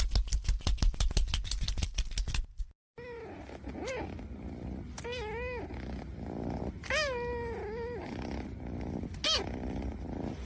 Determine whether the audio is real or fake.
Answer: real